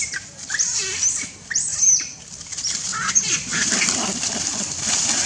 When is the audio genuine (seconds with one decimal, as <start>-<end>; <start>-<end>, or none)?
0.0-2.9; 3.7-5.3